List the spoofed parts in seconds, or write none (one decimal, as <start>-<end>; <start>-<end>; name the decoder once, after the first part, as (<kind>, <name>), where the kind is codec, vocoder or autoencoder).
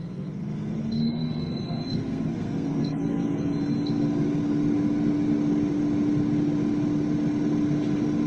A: 0.0-3.5 (codec, SNAC)